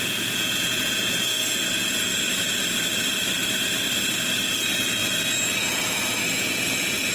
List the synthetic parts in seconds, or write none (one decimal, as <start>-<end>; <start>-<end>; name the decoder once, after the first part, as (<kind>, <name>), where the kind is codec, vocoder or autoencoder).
0.0-2.1 (vocoder, Vocos); 4.4-7.1